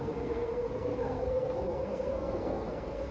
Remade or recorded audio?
remade